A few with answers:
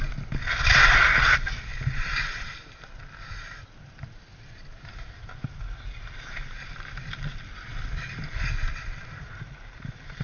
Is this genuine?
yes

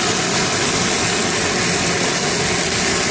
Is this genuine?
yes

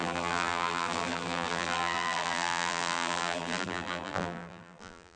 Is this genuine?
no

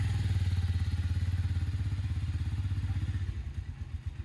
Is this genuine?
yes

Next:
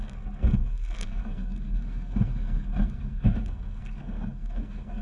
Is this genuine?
no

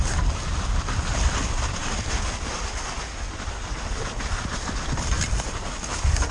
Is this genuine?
yes